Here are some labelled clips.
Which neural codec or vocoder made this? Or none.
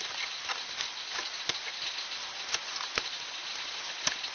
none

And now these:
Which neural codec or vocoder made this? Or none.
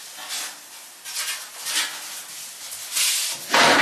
none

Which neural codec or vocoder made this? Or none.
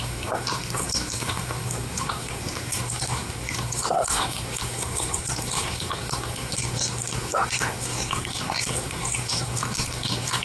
codec, SNAC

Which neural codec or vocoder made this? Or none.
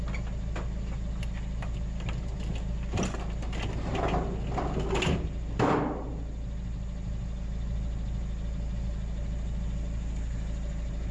none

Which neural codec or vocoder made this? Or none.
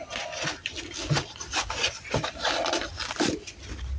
none